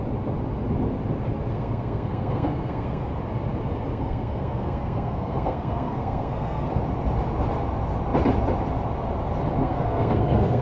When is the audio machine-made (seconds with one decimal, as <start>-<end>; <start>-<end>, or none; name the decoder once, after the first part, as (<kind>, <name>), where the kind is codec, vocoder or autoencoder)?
1.5-3.1 (codec, SNAC); 3.9-6.8; 9.6-10.6